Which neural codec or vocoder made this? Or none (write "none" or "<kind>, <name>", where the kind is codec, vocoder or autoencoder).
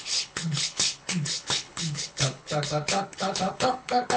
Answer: codec, HILCodec